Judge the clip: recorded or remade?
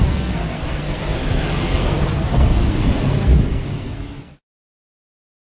remade